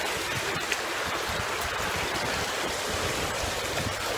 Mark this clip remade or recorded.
recorded